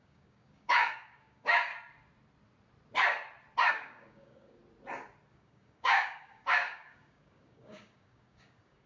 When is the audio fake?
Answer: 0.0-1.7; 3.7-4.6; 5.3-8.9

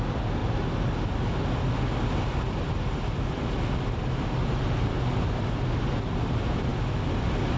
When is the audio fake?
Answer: none

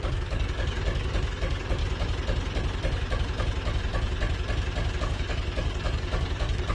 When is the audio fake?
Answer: 0.0-1.8; 5.0-6.7

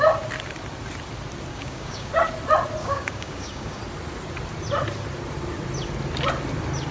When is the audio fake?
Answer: 1.5-2.1; 2.8-3.8